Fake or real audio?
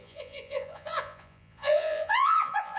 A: fake